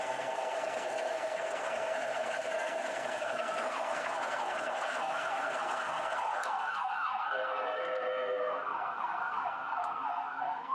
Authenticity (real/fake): fake